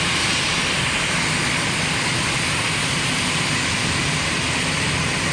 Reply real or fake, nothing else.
real